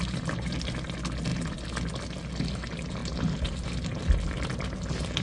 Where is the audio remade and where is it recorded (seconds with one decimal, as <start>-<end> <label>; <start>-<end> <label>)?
0.0-5.2 recorded